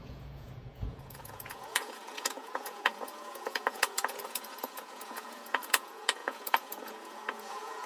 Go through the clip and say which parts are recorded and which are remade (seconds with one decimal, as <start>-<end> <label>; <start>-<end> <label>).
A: 0.0-7.9 remade